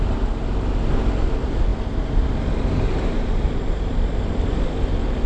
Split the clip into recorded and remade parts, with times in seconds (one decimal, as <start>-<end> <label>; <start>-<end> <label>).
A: 0.0-5.3 recorded

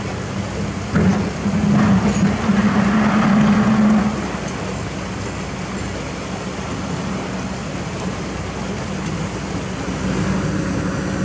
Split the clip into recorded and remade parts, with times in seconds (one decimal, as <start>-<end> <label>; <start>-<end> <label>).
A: 0.0-11.2 recorded

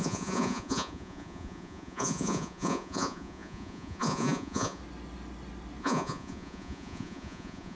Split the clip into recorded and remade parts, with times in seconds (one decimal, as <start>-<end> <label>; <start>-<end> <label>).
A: 0.0-4.8 remade; 4.8-5.8 recorded; 5.8-7.8 remade

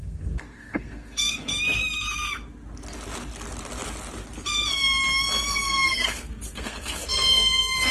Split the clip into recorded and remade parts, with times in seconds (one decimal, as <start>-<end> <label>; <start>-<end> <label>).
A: 0.0-1.5 remade; 1.5-5.5 recorded; 5.5-7.9 remade